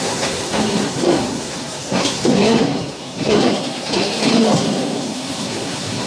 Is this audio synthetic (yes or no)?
yes